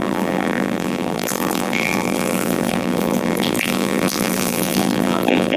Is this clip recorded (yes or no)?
no